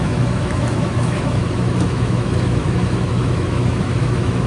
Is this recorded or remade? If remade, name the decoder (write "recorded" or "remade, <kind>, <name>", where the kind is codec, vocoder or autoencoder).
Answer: remade, autoencoder, DAC-VAE